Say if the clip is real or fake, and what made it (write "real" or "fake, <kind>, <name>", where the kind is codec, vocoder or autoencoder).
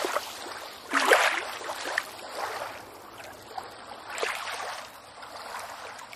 real